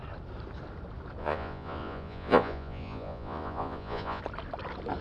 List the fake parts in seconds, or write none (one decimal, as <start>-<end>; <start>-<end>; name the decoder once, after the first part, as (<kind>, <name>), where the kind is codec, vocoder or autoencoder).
1.2-4.2 (vocoder, Vocos)